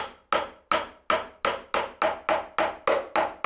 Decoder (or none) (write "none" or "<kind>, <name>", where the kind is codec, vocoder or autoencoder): none